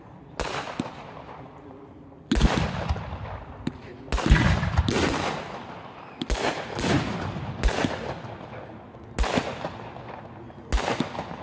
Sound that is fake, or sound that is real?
real